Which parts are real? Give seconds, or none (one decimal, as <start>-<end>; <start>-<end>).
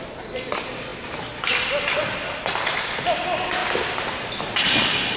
0.0-5.2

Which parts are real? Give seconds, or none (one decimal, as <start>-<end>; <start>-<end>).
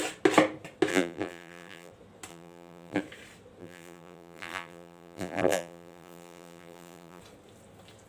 0.0-0.9; 1.9-2.3; 3.0-3.6; 7.2-8.1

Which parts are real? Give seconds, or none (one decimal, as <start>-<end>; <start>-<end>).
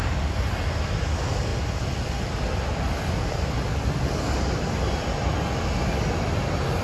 0.0-6.8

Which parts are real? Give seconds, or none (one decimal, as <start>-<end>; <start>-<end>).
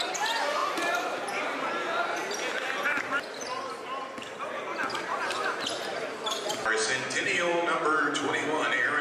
0.0-0.6; 1.4-7.5; 8.0-9.0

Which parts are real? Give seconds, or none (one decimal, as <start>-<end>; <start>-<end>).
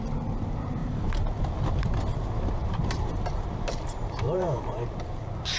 0.0-0.8; 1.4-2.6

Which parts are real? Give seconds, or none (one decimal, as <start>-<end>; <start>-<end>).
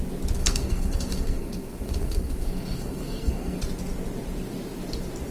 0.0-0.4; 3.6-5.3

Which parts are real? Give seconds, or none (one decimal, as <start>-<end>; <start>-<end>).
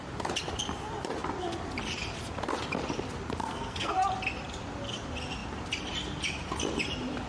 0.0-3.4; 3.9-7.3